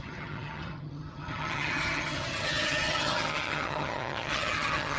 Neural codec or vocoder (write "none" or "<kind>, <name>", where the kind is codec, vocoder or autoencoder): vocoder, HiFi-GAN